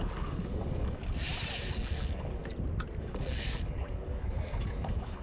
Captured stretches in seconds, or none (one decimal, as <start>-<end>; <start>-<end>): 1.0-1.7; 2.4-3.0